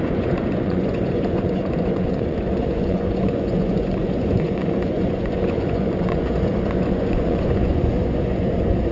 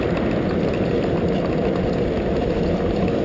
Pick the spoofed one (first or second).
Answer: first